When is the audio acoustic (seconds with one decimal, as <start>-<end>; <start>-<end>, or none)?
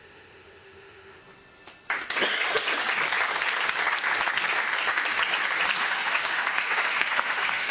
1.2-5.8